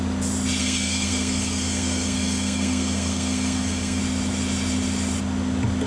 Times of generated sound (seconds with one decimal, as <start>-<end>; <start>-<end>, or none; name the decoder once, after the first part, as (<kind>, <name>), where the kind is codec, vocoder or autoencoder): 0.6-4.0 (codec, SNAC)